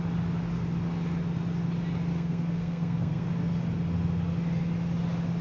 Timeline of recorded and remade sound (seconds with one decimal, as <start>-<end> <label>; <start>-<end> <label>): 0.0-2.1 recorded; 2.1-3.3 remade; 3.3-5.4 recorded